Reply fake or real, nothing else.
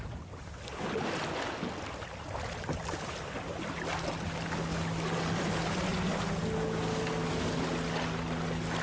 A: real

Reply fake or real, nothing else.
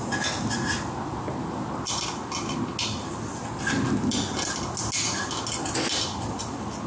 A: real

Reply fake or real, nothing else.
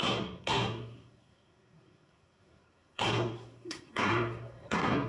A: fake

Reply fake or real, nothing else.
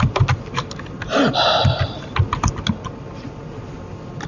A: real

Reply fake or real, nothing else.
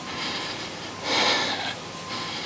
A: fake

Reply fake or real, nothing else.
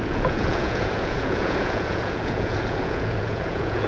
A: fake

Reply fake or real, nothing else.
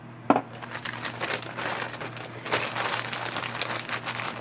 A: real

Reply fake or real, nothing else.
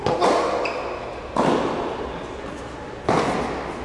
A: real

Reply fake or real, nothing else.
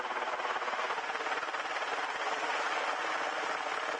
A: real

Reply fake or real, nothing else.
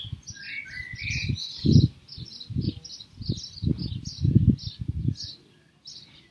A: real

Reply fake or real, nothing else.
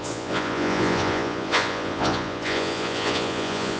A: fake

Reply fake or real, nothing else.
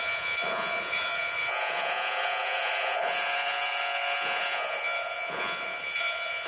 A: fake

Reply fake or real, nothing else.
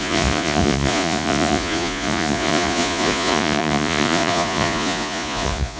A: fake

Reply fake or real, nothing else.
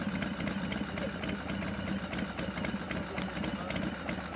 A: real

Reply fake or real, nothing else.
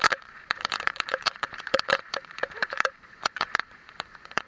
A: fake